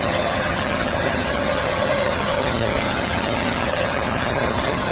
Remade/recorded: remade